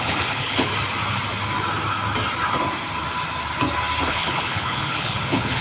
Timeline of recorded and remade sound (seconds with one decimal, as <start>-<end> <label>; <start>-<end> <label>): 0.0-0.7 remade; 0.7-4.1 recorded; 4.1-5.6 remade